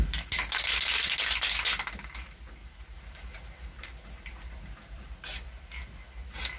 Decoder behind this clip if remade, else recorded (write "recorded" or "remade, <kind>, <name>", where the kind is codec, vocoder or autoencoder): recorded